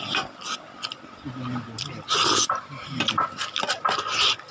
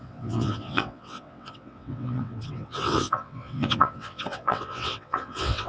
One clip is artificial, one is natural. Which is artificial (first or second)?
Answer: second